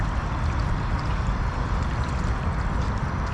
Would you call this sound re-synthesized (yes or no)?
no